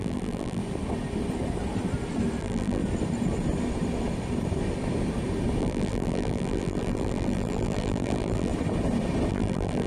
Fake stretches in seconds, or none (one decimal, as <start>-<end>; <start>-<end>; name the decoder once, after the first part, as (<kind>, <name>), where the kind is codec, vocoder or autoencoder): 0.0-0.6 (vocoder, BigVGAN v2); 2.4-2.8; 5.6-8.5; 9.3-9.9

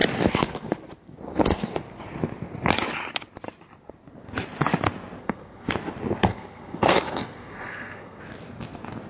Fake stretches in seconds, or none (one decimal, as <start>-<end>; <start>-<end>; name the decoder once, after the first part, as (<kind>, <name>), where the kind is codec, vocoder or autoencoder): 5.2-5.7 (codec, SNAC); 6.3-8.2

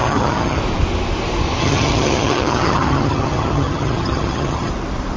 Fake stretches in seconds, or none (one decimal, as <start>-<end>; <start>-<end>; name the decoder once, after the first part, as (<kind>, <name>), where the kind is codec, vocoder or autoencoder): 0.0-0.6 (vocoder, HiFi-GAN); 1.6-4.7

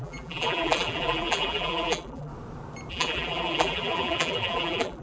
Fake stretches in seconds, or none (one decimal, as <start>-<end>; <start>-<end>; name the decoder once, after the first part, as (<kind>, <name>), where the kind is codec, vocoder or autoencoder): 0.0-2.3 (vocoder, BigVGAN v2); 2.9-5.0

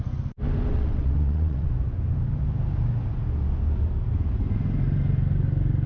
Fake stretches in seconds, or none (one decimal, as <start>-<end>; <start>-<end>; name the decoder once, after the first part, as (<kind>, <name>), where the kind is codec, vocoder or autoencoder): 0.7-1.7 (vocoder, WaveNeXt)

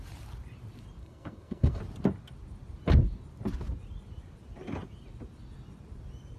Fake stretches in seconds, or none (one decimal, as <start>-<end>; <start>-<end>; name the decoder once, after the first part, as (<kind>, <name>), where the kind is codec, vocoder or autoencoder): 1.0-1.8 (codec, SNAC)

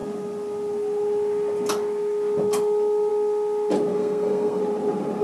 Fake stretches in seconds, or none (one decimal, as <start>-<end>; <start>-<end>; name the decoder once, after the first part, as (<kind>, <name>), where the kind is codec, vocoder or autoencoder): 3.9-4.6 (codec, SNAC)

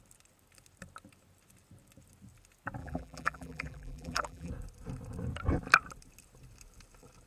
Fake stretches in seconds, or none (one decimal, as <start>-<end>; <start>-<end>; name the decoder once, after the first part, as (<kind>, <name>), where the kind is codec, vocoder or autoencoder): 2.8-4.5 (vocoder, BigVGAN v2)